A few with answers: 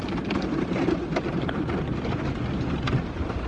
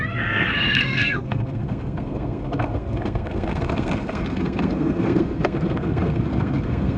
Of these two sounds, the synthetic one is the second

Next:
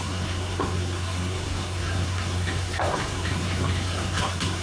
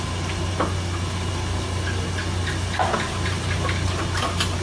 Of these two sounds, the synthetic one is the first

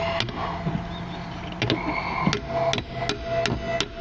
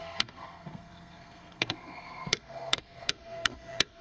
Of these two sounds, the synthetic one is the second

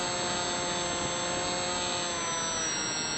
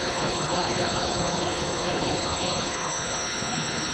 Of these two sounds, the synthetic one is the second